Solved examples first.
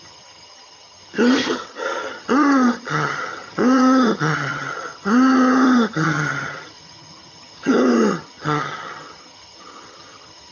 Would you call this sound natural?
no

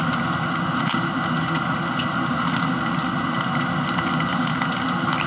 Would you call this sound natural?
yes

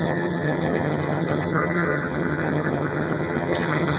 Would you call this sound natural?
no